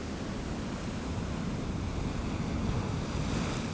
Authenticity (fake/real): real